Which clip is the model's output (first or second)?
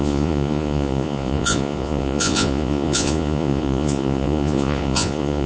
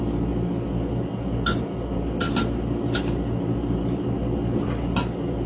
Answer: first